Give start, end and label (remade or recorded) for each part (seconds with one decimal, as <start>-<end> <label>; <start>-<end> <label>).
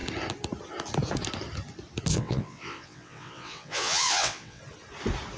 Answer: 0.0-2.1 recorded; 2.1-4.6 remade; 4.6-5.4 recorded